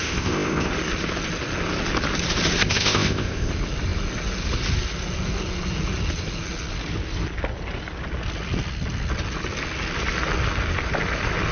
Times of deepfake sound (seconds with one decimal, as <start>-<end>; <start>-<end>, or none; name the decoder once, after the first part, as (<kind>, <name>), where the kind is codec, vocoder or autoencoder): 0.0-0.7 (codec, ZipCodec); 2.6-3.5